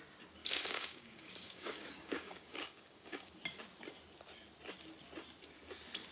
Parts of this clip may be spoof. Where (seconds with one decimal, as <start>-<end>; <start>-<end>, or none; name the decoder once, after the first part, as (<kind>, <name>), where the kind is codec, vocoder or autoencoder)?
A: 0.4-3.3 (codec, DAC)